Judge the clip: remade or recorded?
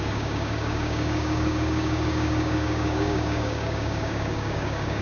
remade